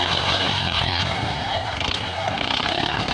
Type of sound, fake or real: fake